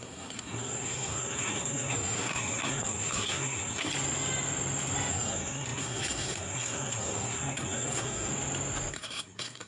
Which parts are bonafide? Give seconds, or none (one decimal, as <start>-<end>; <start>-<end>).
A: 3.9-5.1; 8.3-8.9